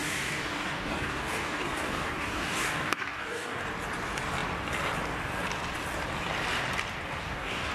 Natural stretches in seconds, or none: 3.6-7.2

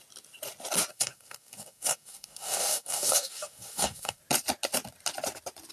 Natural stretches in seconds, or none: 0.0-0.9; 4.2-5.7

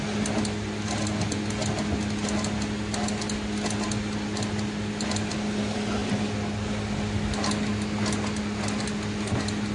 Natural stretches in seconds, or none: 0.0-9.7